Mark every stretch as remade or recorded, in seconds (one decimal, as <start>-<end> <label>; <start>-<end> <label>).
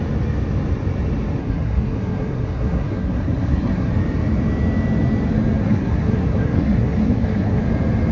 0.0-1.4 recorded; 1.4-3.9 remade; 3.9-5.6 recorded; 5.6-7.6 remade; 7.6-8.1 recorded